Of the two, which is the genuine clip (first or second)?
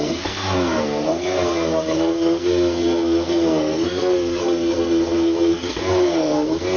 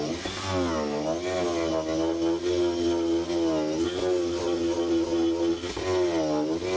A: second